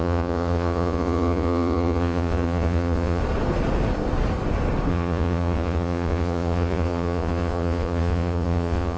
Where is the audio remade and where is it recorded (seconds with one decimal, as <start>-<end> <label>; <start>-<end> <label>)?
0.0-3.2 remade; 3.2-4.9 recorded; 4.9-9.0 remade